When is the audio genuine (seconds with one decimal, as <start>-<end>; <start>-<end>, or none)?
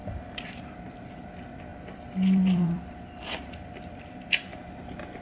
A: 0.6-1.7; 4.0-5.2